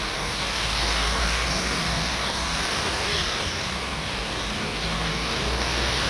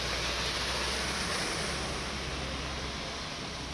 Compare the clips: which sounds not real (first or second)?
first